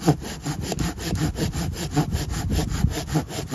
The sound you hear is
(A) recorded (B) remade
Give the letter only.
A